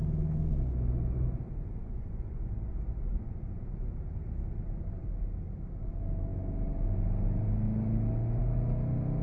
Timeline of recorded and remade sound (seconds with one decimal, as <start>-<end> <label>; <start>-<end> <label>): 0.0-1.8 recorded; 1.8-2.4 remade; 2.4-9.2 recorded